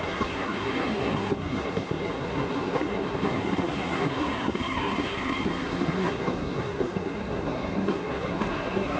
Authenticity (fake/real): fake